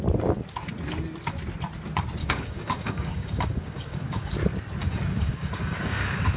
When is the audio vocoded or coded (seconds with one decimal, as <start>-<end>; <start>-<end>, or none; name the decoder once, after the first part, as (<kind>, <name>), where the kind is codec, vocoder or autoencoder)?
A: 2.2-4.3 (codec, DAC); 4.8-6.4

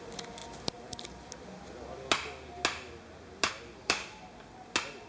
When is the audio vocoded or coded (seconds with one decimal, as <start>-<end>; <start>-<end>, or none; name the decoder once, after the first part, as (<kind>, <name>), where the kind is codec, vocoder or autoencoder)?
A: none

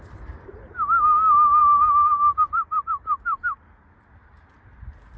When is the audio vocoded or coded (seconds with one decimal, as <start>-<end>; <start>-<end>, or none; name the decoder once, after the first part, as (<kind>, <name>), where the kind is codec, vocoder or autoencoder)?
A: 1.6-3.7 (vocoder, BigVGAN v2)

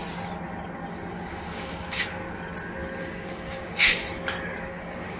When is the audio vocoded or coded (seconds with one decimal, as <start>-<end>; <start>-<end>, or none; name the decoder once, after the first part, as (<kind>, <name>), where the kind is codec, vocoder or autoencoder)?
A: 1.1-2.2 (codec, DAC); 3.0-4.0; 4.7-5.2